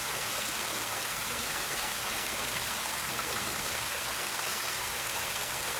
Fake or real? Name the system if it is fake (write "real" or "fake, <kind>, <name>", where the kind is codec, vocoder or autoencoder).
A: fake, codec, SNAC